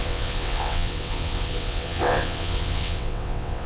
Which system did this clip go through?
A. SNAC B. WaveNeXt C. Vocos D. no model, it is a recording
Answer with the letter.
B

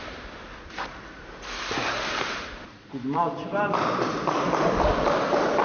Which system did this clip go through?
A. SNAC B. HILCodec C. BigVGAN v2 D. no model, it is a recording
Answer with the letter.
C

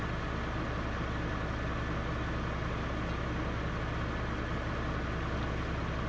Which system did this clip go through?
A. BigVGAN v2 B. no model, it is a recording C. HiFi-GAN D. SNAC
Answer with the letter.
B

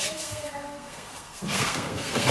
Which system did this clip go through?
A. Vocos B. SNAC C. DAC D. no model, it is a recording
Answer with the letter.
B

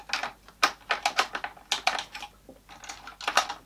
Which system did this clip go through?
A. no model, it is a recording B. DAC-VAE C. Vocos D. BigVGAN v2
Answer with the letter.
A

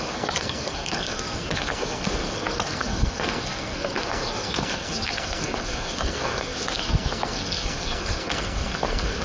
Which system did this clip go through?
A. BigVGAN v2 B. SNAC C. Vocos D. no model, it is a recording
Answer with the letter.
B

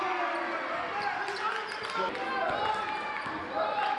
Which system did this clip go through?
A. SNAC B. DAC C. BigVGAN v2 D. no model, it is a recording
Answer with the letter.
D